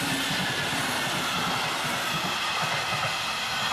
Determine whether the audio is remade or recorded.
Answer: recorded